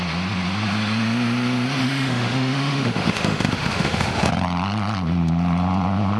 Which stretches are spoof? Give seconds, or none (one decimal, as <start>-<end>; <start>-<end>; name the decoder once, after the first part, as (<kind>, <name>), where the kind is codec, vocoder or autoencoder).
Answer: 1.8-4.3 (autoencoder, DAC-VAE)